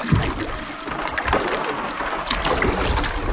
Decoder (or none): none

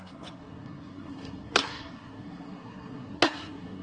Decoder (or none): codec, SNAC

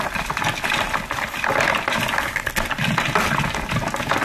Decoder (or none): none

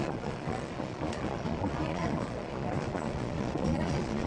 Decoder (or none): vocoder, Vocos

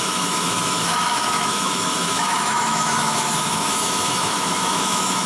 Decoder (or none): autoencoder, DAC-VAE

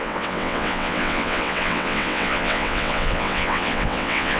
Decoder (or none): vocoder, WaveNeXt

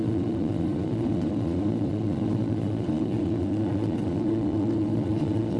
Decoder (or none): vocoder, Vocos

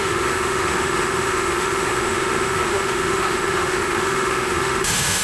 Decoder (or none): autoencoder, DAC-VAE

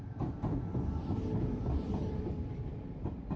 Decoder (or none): none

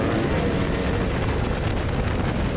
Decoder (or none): none